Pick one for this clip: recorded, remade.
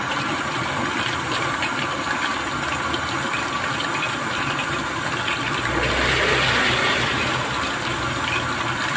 recorded